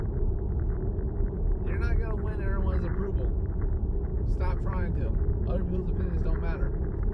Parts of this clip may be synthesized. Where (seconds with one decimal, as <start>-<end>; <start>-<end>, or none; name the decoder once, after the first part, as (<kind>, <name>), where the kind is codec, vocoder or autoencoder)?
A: 4.1-6.0 (vocoder, BigVGAN v2)